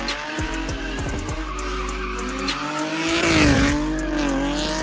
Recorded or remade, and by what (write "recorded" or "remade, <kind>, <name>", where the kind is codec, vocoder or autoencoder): recorded